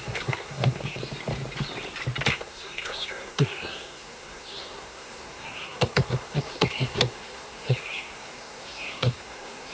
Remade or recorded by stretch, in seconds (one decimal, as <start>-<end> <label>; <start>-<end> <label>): 0.0-1.0 remade; 1.0-2.3 recorded; 2.3-9.7 remade